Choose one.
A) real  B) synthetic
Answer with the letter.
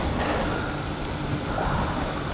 A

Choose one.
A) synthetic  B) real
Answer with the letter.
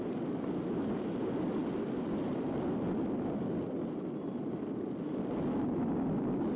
B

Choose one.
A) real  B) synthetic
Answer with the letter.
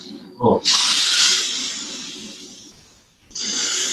B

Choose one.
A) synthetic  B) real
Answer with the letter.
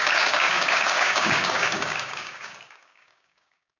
A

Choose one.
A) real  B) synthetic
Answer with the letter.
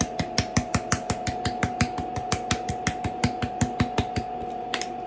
A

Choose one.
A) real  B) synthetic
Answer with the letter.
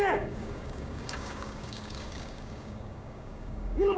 B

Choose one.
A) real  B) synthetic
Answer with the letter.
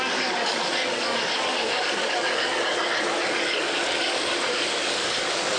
B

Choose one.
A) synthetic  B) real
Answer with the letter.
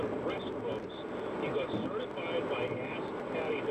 B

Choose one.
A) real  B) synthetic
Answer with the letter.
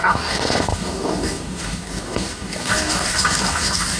B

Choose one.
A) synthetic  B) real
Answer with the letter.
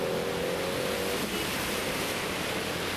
B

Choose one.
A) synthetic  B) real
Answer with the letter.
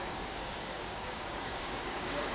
A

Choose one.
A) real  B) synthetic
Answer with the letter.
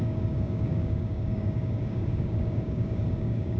B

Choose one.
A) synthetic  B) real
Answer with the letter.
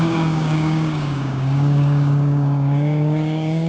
A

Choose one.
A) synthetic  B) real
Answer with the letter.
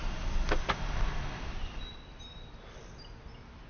B